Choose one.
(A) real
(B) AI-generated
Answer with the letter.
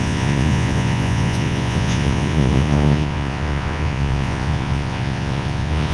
B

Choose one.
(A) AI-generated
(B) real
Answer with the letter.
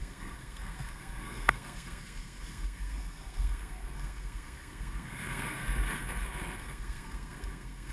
A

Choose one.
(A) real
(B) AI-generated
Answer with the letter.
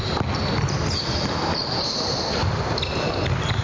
A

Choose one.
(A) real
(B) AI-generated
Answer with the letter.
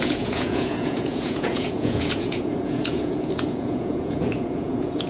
B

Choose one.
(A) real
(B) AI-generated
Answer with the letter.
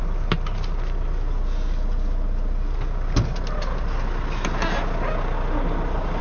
A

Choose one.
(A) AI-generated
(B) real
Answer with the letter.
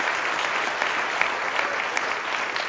B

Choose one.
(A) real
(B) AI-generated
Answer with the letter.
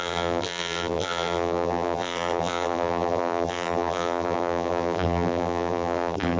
B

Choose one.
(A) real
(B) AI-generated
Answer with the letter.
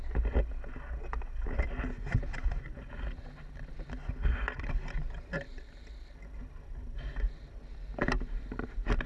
A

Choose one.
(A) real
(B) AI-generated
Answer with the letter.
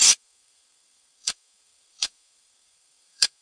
B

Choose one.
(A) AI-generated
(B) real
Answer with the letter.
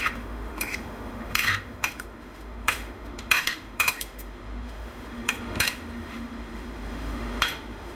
A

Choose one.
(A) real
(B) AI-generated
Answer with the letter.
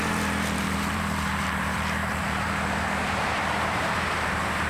B